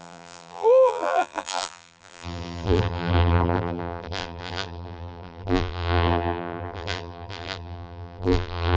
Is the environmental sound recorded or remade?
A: remade